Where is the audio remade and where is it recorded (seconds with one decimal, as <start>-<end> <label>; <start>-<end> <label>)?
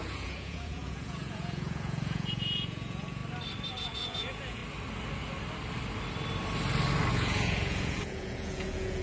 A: 0.0-3.2 remade; 3.2-3.7 recorded; 3.7-4.6 remade; 4.6-7.1 recorded; 7.1-9.0 remade